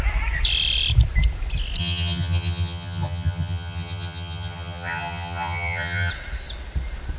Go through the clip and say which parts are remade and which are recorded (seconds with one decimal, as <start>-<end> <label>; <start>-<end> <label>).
0.0-1.8 recorded; 1.8-6.1 remade; 6.1-7.2 recorded